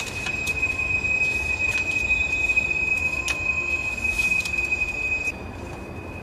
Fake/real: real